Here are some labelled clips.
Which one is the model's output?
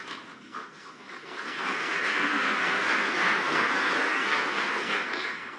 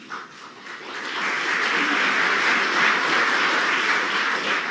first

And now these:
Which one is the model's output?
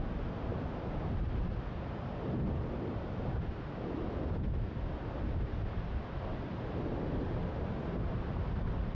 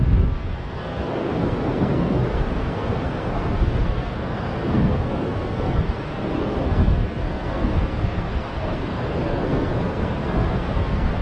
second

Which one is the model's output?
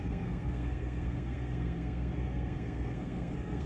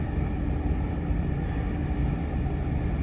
first